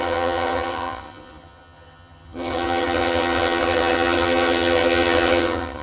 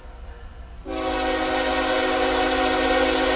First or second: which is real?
second